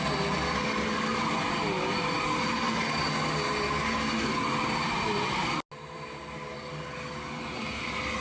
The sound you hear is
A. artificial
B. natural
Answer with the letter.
B